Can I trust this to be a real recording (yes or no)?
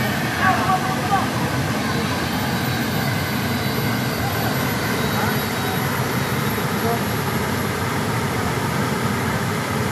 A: yes